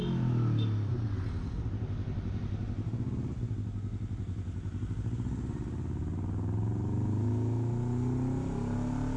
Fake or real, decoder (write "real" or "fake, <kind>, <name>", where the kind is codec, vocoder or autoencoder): real